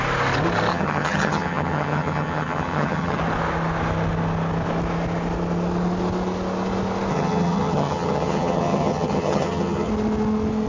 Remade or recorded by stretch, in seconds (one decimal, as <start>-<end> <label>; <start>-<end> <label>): 0.0-0.7 recorded; 0.7-3.2 remade; 3.2-7.1 recorded; 7.1-9.9 remade; 9.9-10.7 recorded